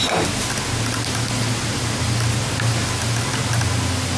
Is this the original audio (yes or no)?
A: yes